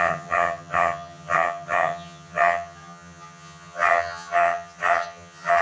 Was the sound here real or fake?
fake